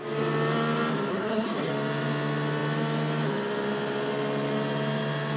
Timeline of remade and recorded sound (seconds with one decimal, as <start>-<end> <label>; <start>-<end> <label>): 0.0-1.1 recorded; 1.1-1.7 remade; 1.7-5.4 recorded

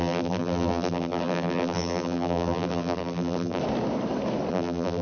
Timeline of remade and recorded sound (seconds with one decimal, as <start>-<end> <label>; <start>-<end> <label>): 0.0-3.6 remade; 3.6-4.5 recorded; 4.5-5.0 remade

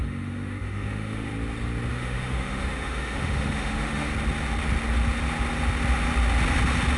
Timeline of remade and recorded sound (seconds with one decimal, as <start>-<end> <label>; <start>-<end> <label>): 0.0-1.3 remade; 1.3-1.9 recorded; 1.9-4.1 remade; 4.1-7.0 recorded

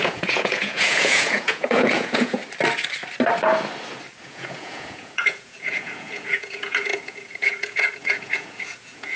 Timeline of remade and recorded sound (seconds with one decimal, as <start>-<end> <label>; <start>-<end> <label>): 0.0-2.4 remade; 2.4-4.2 recorded; 4.2-9.2 remade

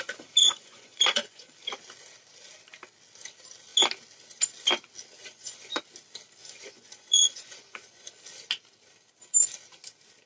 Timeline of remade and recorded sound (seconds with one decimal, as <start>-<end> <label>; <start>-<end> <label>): 0.0-0.4 recorded; 0.4-1.5 remade; 1.5-5.2 recorded; 5.2-5.8 remade; 5.8-6.4 recorded; 6.4-8.1 remade; 8.1-10.3 recorded

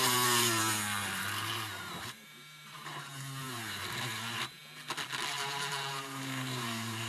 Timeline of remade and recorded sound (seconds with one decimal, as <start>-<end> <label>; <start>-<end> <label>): 0.0-4.6 remade; 4.6-5.3 recorded; 5.3-7.1 remade

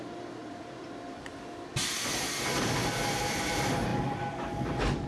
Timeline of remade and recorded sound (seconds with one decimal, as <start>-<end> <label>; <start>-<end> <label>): 0.0-5.1 recorded